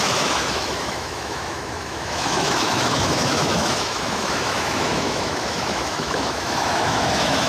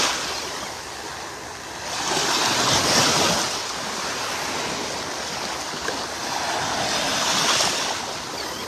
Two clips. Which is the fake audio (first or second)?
first